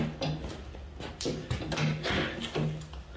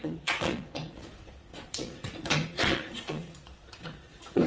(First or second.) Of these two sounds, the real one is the first